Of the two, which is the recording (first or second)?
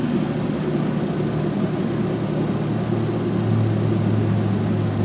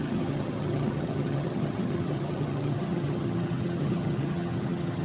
first